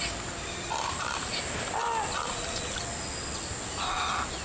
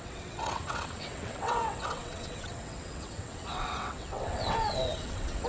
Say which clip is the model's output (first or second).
second